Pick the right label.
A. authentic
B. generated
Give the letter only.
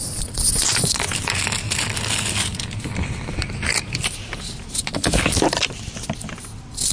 A